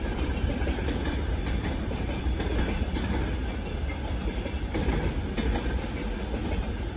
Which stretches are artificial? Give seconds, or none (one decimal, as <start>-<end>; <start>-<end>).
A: 0.0-2.5

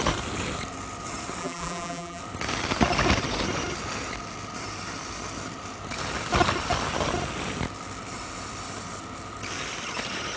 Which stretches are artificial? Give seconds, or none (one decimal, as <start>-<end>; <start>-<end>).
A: 1.4-2.2

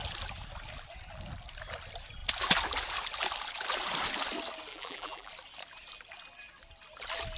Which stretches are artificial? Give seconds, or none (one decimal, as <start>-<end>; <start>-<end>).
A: 4.7-5.3